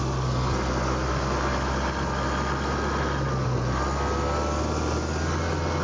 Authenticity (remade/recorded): recorded